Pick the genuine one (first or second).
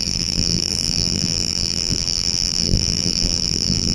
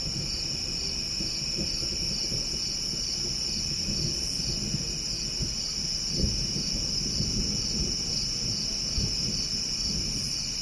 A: second